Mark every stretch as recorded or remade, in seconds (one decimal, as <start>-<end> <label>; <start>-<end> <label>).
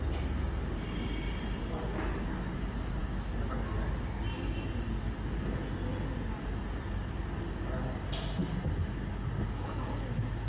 0.0-10.5 recorded